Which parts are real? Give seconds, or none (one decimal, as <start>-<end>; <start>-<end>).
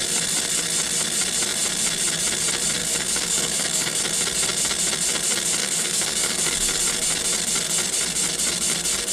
0.0-2.8; 4.0-5.6; 6.8-9.1